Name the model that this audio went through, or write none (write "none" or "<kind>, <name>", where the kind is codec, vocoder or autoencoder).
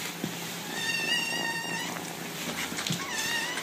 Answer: none